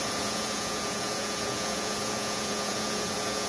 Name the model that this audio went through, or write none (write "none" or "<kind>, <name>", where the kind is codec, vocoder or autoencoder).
vocoder, Vocos